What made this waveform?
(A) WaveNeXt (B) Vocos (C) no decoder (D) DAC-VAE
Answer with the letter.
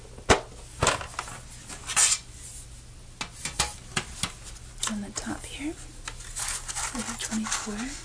C